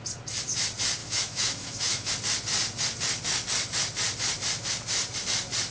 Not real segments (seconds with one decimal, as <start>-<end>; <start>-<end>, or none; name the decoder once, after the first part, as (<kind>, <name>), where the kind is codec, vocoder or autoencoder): 1.0-2.1 (autoencoder, DAC-VAE)